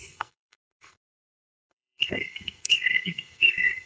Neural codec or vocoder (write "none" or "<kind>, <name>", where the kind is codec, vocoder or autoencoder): codec, SNAC